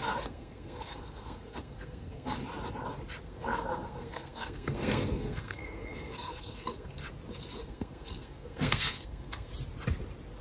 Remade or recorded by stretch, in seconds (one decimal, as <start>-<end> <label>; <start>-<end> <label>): 0.0-2.4 remade; 2.4-3.2 recorded; 3.2-7.0 remade; 7.0-7.6 recorded; 7.6-9.5 remade; 9.5-10.4 recorded